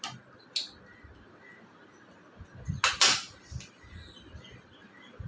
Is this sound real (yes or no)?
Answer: yes